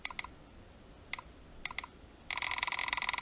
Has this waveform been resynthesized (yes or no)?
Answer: no